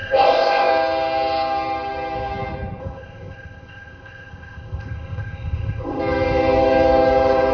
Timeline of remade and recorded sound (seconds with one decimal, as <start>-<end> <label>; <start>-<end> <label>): 0.0-0.7 remade; 0.7-2.8 recorded; 2.8-6.0 remade; 6.0-7.5 recorded